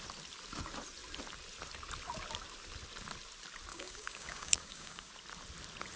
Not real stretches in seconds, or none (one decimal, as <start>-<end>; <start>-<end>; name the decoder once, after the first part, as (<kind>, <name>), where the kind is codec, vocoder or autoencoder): 3.7-5.1 (codec, DAC)